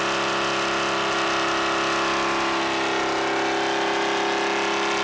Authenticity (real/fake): real